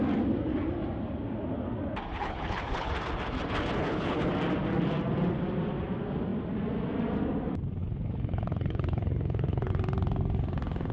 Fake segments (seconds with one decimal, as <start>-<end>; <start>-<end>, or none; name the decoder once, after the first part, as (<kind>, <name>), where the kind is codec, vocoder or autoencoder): 2.1-2.9 (codec, HILCodec); 3.8-4.3; 7.8-9.7